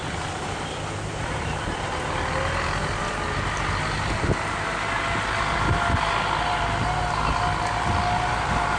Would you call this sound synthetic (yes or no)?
no